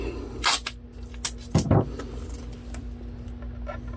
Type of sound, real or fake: real